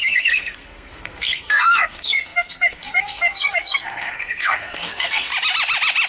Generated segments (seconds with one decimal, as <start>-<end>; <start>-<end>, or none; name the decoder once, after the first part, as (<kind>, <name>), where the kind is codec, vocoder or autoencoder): 0.0-5.3 (codec, SNAC)